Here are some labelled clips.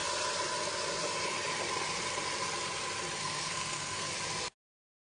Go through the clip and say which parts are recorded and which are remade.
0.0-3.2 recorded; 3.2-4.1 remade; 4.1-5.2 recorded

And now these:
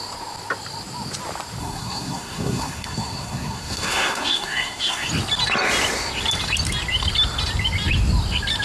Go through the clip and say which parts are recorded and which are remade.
0.0-1.6 recorded; 1.6-5.1 remade; 5.1-8.6 recorded

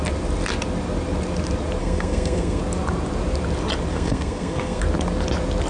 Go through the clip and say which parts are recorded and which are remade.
0.0-1.8 recorded; 1.8-2.6 remade; 2.6-3.9 recorded; 3.9-4.8 remade; 4.8-5.7 recorded

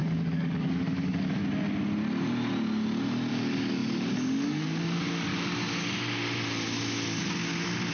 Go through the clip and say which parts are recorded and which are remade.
0.0-1.4 remade; 1.4-3.3 recorded; 3.3-5.3 remade; 5.3-7.9 recorded

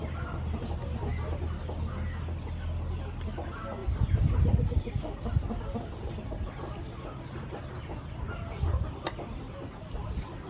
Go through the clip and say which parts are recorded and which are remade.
0.0-3.8 recorded; 3.8-4.4 remade; 4.4-10.5 recorded

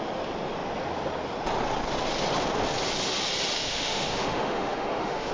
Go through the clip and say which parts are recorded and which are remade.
0.0-3.6 recorded; 3.6-5.3 remade